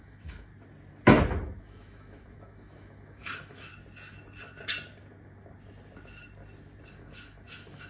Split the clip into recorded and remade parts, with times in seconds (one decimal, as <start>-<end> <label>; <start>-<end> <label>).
0.0-0.5 remade; 0.5-1.6 recorded; 1.6-3.7 remade; 3.7-6.9 recorded; 6.9-7.9 remade